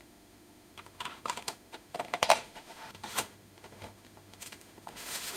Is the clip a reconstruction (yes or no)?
yes